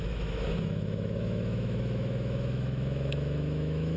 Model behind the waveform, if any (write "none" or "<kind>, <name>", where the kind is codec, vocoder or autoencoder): autoencoder, DAC-VAE